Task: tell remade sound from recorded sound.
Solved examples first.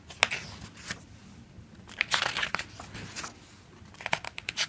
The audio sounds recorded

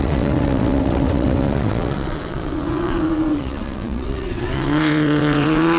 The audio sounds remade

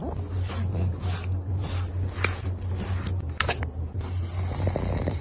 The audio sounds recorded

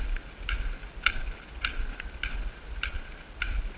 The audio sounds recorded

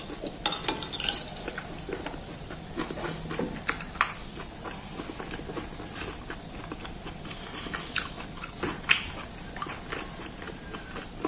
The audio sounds recorded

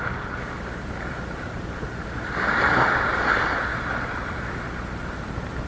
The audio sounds recorded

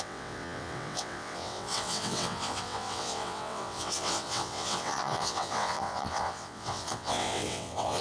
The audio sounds remade